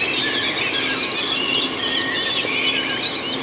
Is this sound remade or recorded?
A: recorded